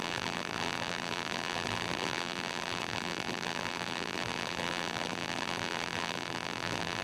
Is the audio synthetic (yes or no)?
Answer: yes